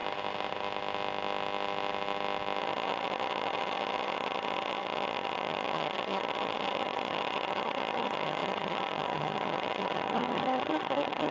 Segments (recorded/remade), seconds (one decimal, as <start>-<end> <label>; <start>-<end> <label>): 0.0-2.6 recorded; 2.6-11.3 remade